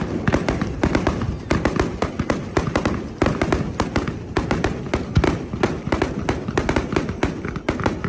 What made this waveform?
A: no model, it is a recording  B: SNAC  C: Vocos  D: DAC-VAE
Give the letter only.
A